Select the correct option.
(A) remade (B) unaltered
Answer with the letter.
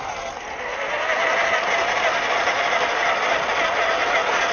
B